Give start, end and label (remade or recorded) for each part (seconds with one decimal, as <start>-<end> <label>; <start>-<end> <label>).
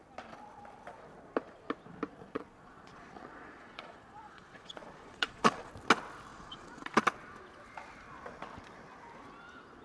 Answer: 0.0-2.1 recorded; 2.1-5.7 remade; 5.7-6.3 recorded; 6.3-7.0 remade; 7.0-9.8 recorded